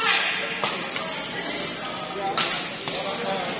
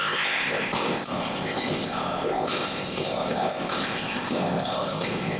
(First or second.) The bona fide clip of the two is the first